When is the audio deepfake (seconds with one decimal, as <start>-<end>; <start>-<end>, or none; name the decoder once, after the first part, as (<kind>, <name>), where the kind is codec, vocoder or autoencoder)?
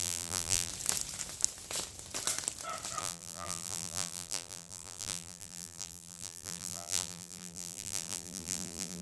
0.0-0.7 (vocoder, BigVGAN v2); 3.0-9.0